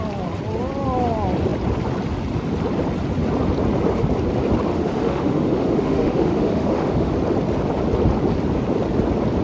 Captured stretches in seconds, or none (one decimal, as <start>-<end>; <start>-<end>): 0.0-4.7; 7.1-9.4